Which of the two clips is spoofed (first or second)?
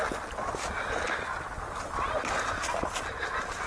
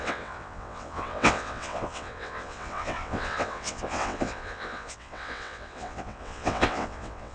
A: second